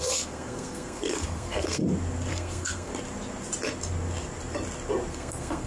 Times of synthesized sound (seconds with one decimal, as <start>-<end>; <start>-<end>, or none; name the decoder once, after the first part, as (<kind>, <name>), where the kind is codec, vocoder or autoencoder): 0.0-1.8 (codec, SNAC); 2.3-2.9; 5.1-5.7